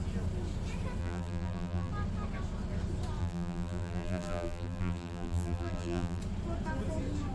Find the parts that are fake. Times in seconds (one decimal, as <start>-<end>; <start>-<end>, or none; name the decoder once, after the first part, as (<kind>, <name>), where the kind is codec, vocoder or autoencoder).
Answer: 1.0-1.9 (vocoder, BigVGAN v2); 3.2-6.2